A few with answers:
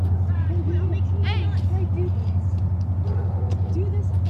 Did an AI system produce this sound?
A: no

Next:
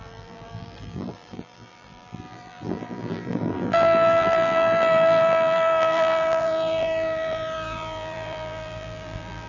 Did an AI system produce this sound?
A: yes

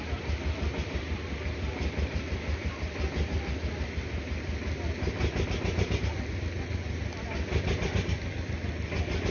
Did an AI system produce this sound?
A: no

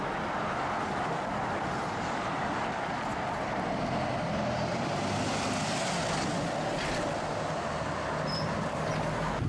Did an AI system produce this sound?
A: no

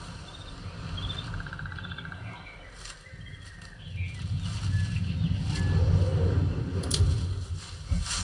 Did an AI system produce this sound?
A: no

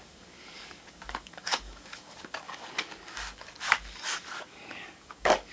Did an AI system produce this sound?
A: yes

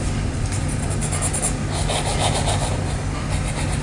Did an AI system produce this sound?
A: no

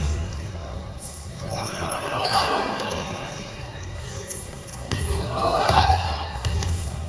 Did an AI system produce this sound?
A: yes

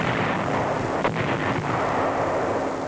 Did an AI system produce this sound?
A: no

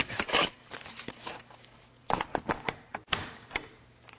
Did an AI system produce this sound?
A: yes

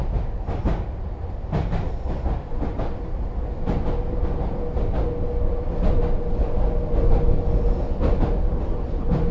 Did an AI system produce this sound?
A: no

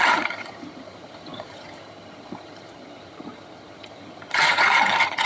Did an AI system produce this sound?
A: yes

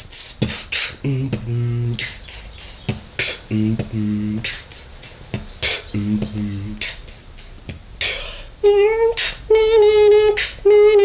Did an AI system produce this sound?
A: no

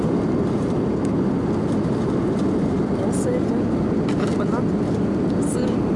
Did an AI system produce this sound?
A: no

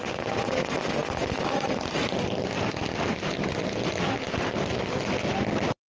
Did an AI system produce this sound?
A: no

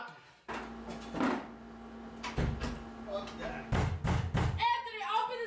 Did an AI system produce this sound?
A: no